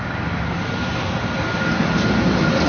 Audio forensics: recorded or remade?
recorded